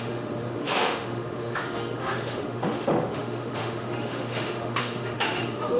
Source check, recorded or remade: remade